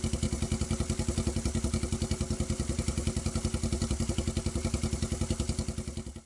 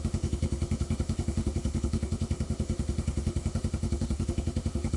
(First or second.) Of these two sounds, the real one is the first